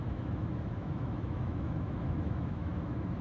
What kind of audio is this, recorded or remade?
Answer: remade